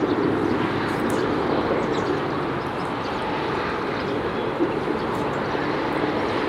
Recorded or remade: recorded